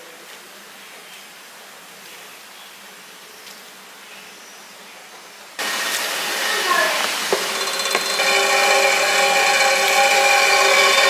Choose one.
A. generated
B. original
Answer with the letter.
B